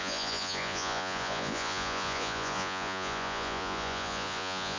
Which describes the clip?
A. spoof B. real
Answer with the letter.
A